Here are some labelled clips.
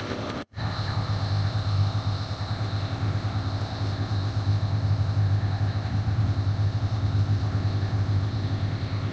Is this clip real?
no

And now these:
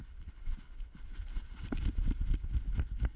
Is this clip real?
yes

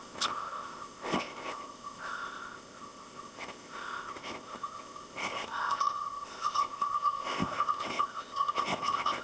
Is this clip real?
no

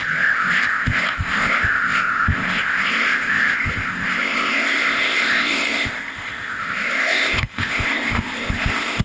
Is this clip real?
no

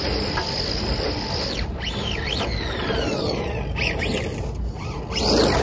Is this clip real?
yes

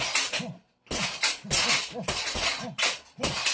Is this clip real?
yes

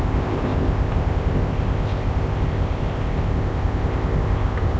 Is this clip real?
no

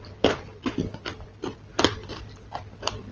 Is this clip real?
yes